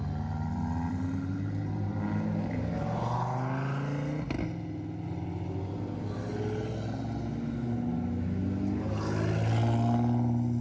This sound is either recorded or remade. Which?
recorded